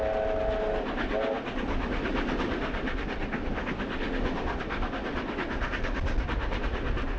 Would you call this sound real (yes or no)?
yes